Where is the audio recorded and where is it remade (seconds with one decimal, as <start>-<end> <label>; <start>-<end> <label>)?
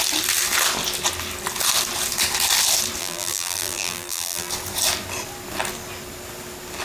0.0-3.0 recorded; 3.0-4.5 remade; 4.5-6.8 recorded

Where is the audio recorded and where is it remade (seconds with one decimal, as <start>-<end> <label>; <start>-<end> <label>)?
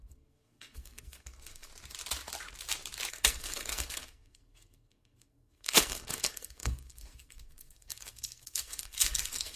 0.0-1.7 remade; 1.7-3.1 recorded; 3.1-9.6 remade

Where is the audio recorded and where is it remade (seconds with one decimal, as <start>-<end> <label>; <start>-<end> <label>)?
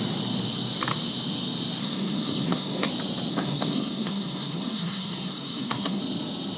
0.0-1.8 recorded; 1.8-2.9 remade; 2.9-3.3 recorded; 3.3-6.0 remade; 6.0-6.6 recorded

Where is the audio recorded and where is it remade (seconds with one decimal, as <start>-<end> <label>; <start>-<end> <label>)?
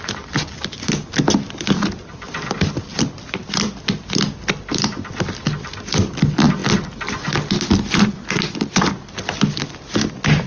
0.0-10.5 recorded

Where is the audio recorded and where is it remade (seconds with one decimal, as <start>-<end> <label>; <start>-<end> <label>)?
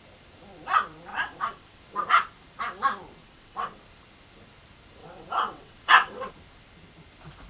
0.0-1.1 recorded; 1.1-1.8 remade; 1.8-3.2 recorded; 3.2-3.8 remade; 3.8-5.0 recorded; 5.0-6.3 remade; 6.3-7.5 recorded